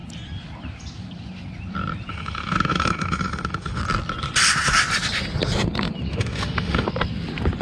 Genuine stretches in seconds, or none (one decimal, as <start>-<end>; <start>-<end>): 0.0-2.1; 3.8-6.1; 6.9-7.6